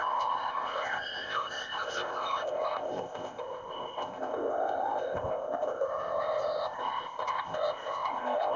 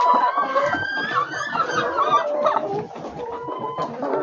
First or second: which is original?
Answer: second